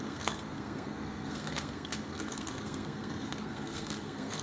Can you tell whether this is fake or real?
fake